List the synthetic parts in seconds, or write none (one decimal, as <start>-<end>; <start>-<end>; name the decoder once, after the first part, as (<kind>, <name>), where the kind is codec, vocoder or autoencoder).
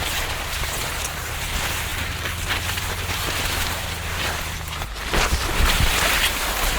none